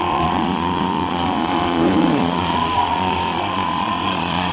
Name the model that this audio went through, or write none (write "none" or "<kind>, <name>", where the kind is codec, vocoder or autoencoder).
vocoder, Vocos